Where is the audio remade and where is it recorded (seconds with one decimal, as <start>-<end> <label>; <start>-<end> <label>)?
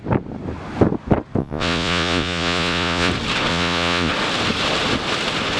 0.0-1.4 recorded; 1.4-3.1 remade; 3.1-3.5 recorded; 3.5-4.1 remade; 4.1-5.6 recorded